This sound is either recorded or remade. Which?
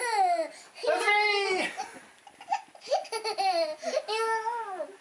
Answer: recorded